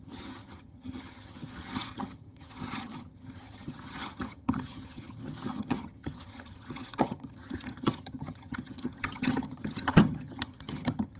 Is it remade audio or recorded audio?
remade